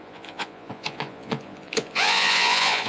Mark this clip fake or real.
fake